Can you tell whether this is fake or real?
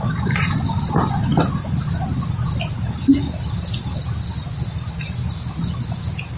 real